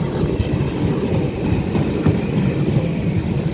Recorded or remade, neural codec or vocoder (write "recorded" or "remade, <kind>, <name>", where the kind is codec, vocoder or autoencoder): recorded